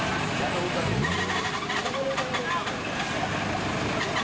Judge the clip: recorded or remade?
recorded